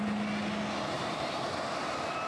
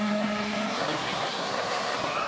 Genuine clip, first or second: first